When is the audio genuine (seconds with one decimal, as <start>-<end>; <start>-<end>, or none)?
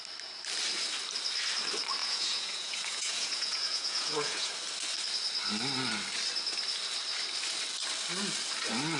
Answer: 0.0-2.0; 4.5-9.0